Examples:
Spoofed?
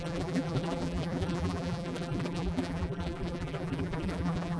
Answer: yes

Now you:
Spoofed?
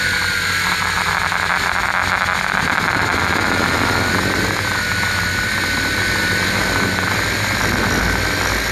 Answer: no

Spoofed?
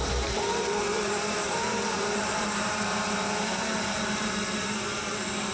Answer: yes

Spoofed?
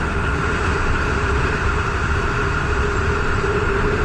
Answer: yes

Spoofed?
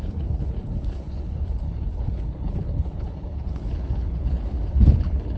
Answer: yes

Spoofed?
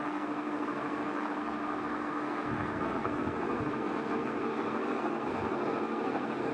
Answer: yes